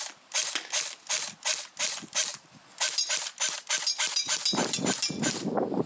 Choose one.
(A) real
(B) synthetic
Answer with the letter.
A